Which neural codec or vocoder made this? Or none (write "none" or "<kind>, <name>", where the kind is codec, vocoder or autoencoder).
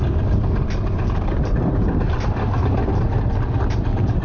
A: none